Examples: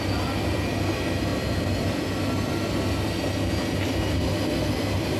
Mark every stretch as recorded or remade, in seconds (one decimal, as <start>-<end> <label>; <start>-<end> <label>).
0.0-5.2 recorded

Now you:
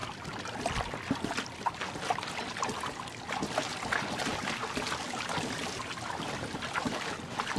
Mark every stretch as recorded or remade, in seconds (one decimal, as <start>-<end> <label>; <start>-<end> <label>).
0.0-7.6 recorded

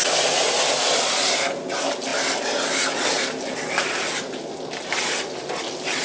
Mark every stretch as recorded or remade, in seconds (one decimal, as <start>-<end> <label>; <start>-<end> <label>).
0.0-6.0 recorded

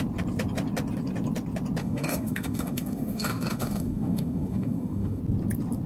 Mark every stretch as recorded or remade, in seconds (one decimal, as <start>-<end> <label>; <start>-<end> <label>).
0.0-1.8 recorded; 1.8-5.2 remade; 5.2-5.9 recorded